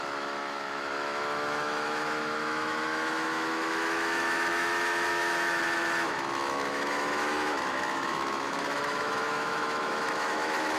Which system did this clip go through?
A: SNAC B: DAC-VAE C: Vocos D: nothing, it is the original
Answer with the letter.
B